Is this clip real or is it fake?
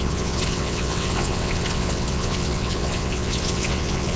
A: fake